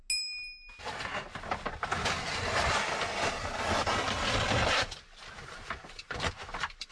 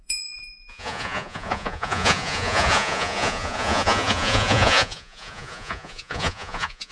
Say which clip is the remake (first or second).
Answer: second